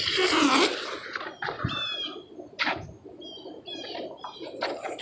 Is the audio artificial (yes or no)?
no